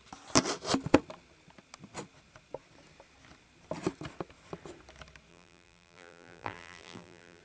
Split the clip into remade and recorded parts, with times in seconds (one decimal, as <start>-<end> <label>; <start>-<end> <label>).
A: 0.0-5.3 recorded; 5.3-7.4 remade